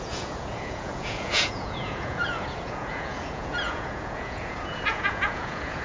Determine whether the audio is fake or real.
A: fake